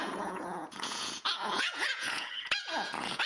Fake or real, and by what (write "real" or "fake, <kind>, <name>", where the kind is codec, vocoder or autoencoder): fake, vocoder, Vocos